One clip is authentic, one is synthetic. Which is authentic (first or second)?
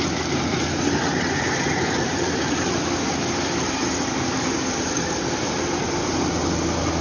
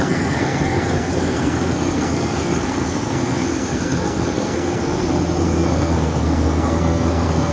first